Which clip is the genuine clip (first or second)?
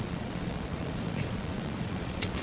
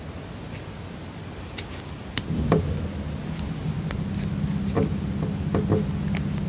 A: second